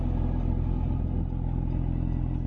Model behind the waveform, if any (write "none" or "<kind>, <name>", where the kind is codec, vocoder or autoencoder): none